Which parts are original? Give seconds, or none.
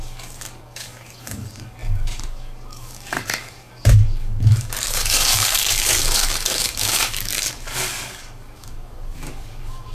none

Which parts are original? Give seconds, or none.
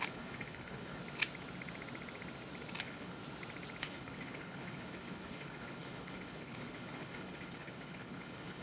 1.0-2.8; 3.2-3.8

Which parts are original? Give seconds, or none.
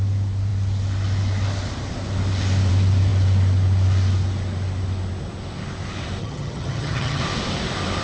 0.0-6.2; 7.2-8.0